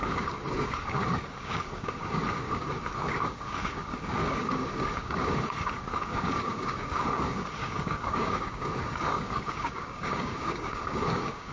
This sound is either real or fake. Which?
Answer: fake